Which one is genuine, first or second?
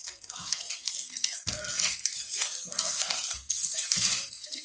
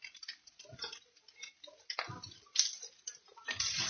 second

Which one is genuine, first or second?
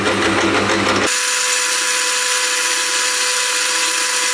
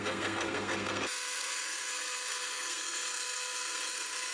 first